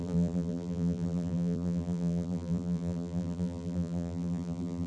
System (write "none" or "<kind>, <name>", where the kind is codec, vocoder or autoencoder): vocoder, BigVGAN v2